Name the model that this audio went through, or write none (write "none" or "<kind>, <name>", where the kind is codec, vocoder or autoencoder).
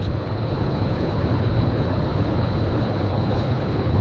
codec, HILCodec